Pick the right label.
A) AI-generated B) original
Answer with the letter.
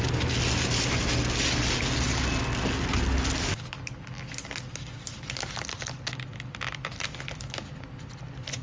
B